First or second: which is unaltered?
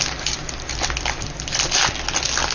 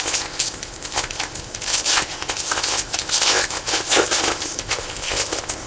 first